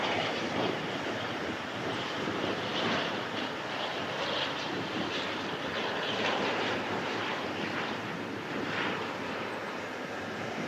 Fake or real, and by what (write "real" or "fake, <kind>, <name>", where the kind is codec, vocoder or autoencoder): fake, vocoder, BigVGAN v2